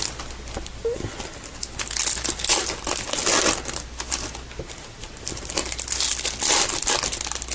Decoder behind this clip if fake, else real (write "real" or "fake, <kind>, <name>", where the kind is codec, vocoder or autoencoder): real